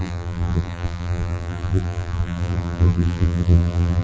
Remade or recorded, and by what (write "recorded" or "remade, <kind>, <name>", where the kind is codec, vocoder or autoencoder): remade, vocoder, BigVGAN v2